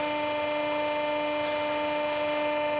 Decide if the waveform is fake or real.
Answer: real